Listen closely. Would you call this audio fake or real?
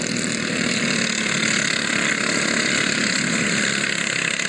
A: real